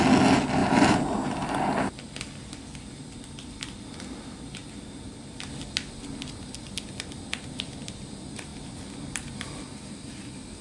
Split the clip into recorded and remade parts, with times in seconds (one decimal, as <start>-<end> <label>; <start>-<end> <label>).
0.0-0.6 recorded; 0.6-1.7 remade; 1.7-10.6 recorded